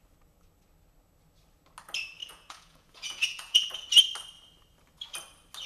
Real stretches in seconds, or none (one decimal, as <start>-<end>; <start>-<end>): 0.0-2.2; 3.7-5.7